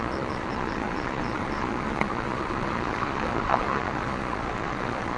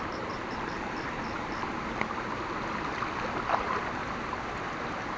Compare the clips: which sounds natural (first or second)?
second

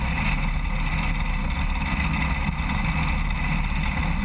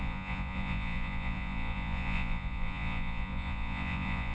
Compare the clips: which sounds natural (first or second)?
first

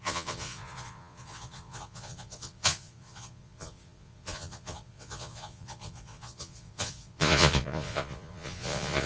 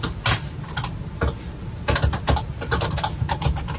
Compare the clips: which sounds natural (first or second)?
second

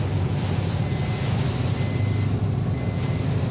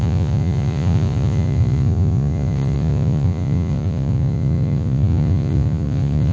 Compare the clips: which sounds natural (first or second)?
first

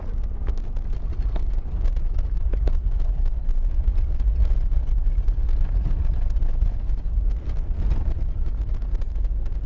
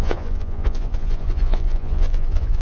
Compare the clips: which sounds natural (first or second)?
first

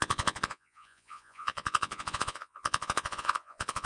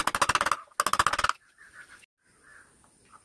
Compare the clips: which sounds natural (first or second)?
second